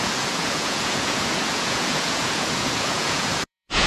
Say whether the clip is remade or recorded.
remade